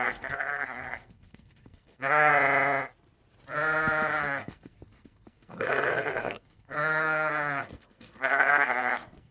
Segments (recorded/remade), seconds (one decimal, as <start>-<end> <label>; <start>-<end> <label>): 0.0-2.3 remade; 2.3-4.2 recorded; 4.2-9.3 remade